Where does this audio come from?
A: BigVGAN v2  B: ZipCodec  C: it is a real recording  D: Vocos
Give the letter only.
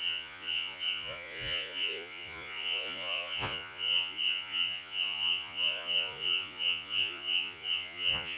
D